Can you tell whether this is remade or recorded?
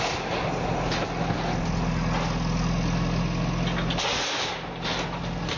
recorded